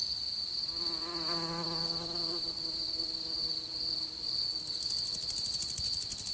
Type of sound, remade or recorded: recorded